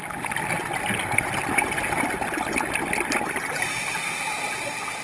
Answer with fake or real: real